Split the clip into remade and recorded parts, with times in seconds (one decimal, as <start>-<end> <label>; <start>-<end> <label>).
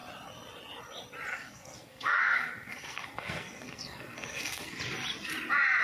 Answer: 0.0-1.3 recorded; 1.3-4.8 remade; 4.8-5.8 recorded